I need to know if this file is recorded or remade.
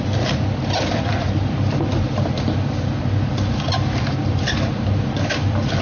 remade